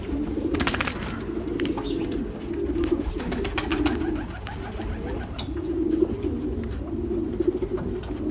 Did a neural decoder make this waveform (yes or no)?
no